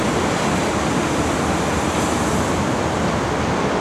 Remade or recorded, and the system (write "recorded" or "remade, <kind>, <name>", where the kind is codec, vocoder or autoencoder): recorded